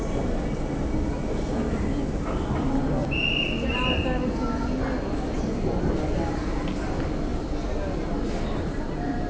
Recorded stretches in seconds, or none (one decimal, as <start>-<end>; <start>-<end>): 0.0-9.3